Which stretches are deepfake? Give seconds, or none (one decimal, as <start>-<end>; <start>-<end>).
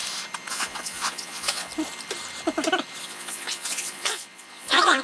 0.5-1.7; 3.0-5.0